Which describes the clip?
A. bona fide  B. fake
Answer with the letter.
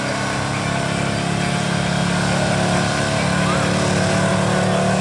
A